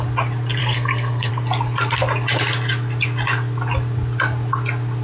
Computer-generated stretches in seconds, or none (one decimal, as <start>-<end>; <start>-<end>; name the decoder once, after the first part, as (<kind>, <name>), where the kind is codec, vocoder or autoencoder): 0.6-1.3 (codec, SNAC)